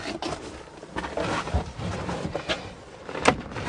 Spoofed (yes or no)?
no